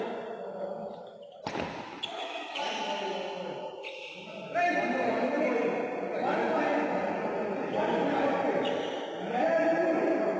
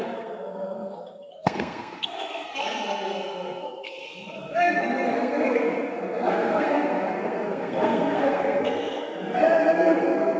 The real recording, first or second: first